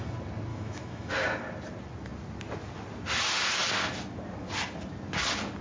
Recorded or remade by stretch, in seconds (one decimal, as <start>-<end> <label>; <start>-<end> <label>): 0.0-0.5 recorded; 0.5-1.1 remade; 1.1-5.6 recorded